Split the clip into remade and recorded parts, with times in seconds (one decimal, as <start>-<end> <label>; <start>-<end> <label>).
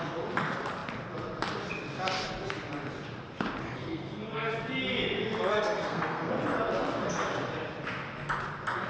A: 0.0-3.8 recorded; 3.8-4.6 remade; 4.6-5.5 recorded; 5.5-6.3 remade; 6.3-8.9 recorded